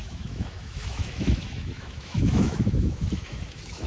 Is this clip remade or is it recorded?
remade